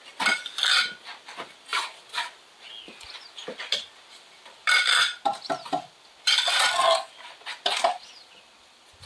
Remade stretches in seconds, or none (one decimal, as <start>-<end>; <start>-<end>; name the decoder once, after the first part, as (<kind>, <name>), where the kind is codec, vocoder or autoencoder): none